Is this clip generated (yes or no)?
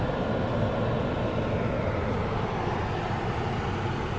no